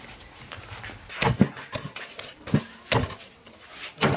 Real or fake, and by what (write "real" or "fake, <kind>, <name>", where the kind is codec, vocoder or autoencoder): real